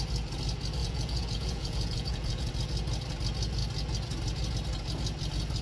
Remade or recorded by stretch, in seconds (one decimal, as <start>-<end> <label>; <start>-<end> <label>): 0.0-0.8 recorded; 0.8-2.5 remade; 2.5-5.6 recorded

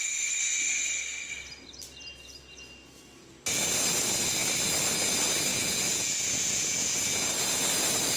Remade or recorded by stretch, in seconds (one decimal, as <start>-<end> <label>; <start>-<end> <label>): 0.0-5.5 recorded; 5.5-7.6 remade; 7.6-8.2 recorded

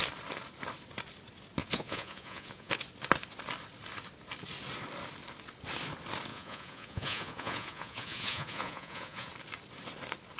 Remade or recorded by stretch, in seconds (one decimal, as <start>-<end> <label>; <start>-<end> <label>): 0.0-1.6 recorded; 1.6-2.7 remade; 2.7-6.3 recorded; 6.3-9.3 remade; 9.3-10.4 recorded

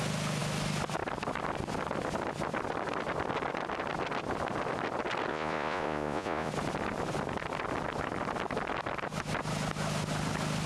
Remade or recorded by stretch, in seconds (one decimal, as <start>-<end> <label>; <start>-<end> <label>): 0.0-5.3 recorded; 5.3-6.5 remade; 6.5-10.7 recorded

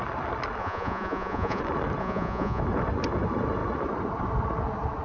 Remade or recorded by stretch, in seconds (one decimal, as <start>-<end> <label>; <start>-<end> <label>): 0.0-0.6 recorded; 0.6-1.6 remade; 1.6-2.0 recorded; 2.0-2.6 remade; 2.6-5.0 recorded

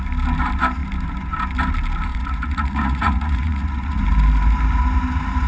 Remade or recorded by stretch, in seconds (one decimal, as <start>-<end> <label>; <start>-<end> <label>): 0.0-2.1 recorded; 2.1-4.0 remade; 4.0-5.5 recorded

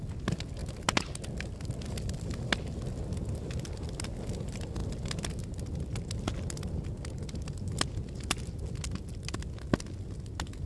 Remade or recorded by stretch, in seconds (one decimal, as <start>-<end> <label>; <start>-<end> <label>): 0.0-10.7 recorded

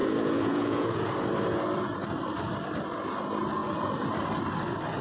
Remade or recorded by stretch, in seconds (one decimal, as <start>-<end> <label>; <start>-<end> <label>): 0.0-1.1 remade; 1.1-5.0 recorded